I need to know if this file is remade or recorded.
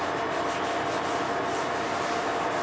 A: remade